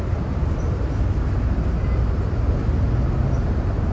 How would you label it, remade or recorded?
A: recorded